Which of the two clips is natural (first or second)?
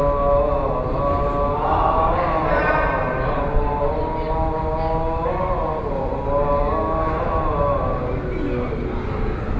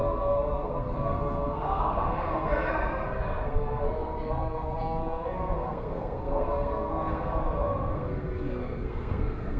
first